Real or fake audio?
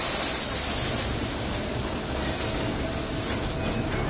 real